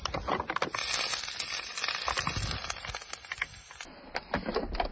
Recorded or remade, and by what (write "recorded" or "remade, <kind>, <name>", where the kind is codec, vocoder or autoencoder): recorded